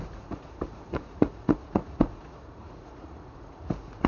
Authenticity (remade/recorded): remade